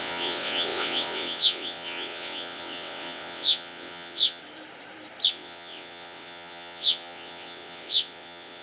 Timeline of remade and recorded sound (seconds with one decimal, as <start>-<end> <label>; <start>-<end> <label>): 0.0-4.4 remade; 4.4-5.3 recorded; 5.3-8.6 remade